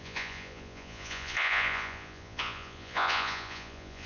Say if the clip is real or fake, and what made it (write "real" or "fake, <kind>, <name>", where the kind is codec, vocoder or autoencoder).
fake, vocoder, Vocos